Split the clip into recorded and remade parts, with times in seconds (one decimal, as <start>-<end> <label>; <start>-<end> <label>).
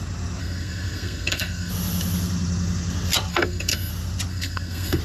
0.0-0.4 recorded; 0.4-1.7 remade; 1.7-3.3 recorded; 3.3-3.9 remade; 3.9-4.3 recorded; 4.3-5.0 remade